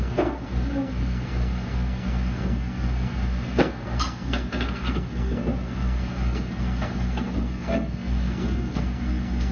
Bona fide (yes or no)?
no